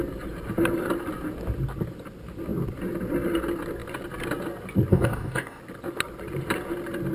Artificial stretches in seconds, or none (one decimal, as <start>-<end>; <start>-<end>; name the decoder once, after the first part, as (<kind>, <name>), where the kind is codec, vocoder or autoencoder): 4.9-5.6 (codec, DAC)